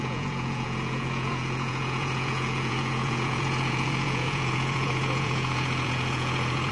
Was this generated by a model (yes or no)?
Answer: yes